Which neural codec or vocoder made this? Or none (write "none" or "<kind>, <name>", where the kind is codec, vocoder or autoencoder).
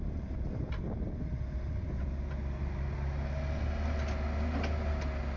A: none